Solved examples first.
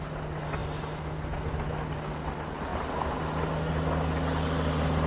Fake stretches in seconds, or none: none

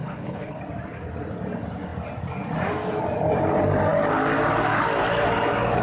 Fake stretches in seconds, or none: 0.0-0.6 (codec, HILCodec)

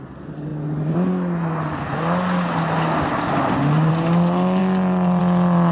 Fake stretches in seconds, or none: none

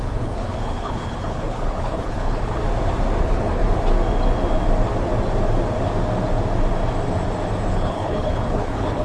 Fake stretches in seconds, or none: 0.0-2.6 (codec, HILCodec); 3.2-3.6; 7.7-9.0